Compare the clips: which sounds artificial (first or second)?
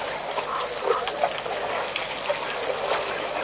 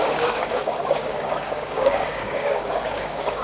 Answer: second